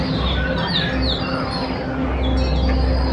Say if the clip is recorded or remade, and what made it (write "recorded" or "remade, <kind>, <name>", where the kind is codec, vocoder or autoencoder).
recorded